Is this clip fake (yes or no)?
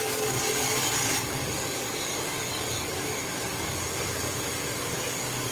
yes